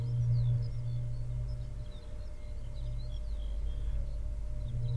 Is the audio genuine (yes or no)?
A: yes